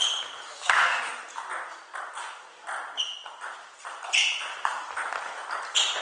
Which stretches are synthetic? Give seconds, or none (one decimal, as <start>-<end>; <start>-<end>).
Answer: 0.5-1.1